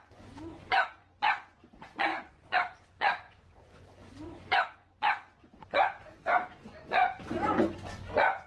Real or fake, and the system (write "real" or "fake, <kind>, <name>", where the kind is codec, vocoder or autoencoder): fake, vocoder, Vocos